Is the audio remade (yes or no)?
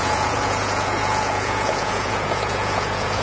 yes